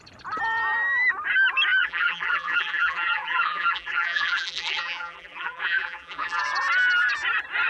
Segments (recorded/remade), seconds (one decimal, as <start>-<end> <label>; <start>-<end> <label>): 0.0-1.8 recorded; 1.8-6.4 remade; 6.4-7.7 recorded

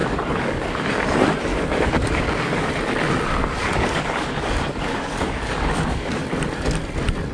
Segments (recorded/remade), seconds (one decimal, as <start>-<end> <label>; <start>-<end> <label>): 0.0-0.9 remade; 0.9-1.5 recorded; 1.5-2.7 remade; 2.7-3.4 recorded; 3.4-6.2 remade; 6.2-7.3 recorded

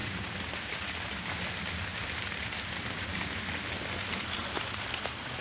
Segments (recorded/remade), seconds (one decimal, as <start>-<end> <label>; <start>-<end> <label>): 0.0-1.5 remade; 1.5-1.9 recorded; 1.9-3.4 remade; 3.4-4.4 recorded; 4.4-5.4 remade

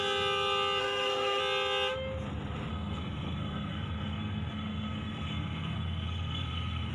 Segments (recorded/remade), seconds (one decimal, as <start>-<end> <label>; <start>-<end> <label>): 0.0-0.8 recorded; 0.8-1.4 remade; 1.4-2.7 recorded; 2.7-6.9 remade

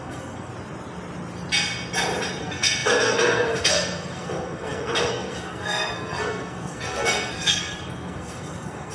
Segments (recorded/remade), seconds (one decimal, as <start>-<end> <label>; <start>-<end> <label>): 0.0-0.5 remade; 0.5-2.4 recorded; 2.4-8.9 remade

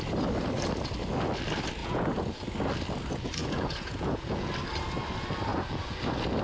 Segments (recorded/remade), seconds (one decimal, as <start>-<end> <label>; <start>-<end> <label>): 0.0-1.8 recorded; 1.8-2.4 remade; 2.4-3.4 recorded; 3.4-4.5 remade; 4.5-5.5 recorded; 5.5-6.0 remade; 6.0-6.4 recorded